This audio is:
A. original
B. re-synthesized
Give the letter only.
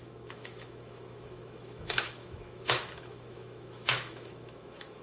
B